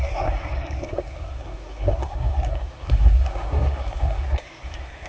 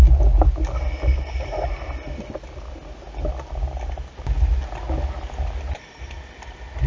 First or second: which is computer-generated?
first